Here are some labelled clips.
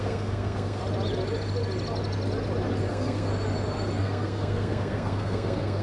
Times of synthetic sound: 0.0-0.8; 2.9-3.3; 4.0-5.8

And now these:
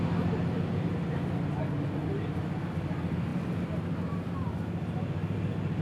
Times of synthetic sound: none

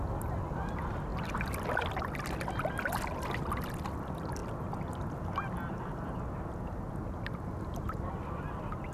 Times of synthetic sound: none

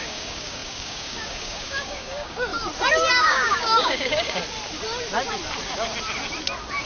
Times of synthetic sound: 0.0-2.5; 3.1-4.4

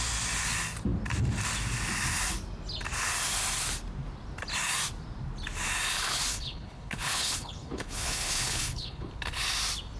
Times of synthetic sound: 6.3-9.1

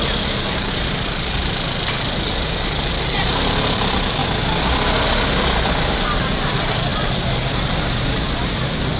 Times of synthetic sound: 0.0-1.4; 1.9-4.2; 5.9-9.0